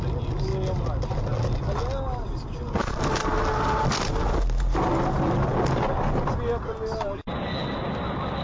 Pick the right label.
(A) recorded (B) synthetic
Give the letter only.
A